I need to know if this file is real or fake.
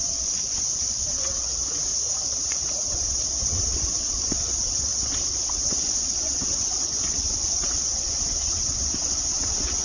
fake